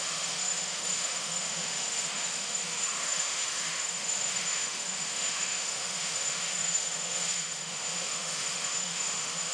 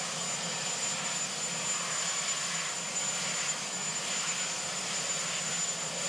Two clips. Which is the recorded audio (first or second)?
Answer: second